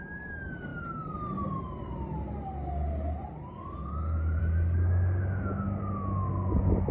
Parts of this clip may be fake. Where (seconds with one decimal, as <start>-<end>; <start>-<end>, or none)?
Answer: none